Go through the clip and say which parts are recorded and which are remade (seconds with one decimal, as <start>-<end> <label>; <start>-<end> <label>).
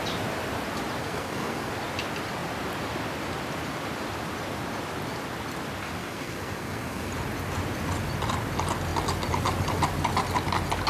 0.0-1.0 recorded; 1.0-1.7 remade; 1.7-6.0 recorded; 6.0-7.1 remade; 7.1-10.9 recorded